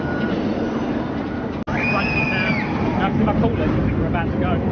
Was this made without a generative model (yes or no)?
yes